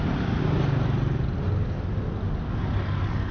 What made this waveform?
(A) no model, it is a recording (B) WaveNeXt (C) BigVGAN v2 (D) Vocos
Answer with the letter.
A